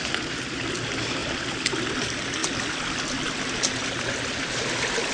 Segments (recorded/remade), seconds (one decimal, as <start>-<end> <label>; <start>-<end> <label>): 0.0-5.1 recorded